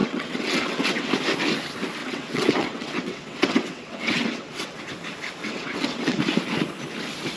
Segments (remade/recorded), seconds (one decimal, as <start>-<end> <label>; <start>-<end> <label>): 0.0-1.1 remade; 1.1-2.0 recorded; 2.0-4.8 remade; 4.8-5.4 recorded; 5.4-6.2 remade; 6.2-7.4 recorded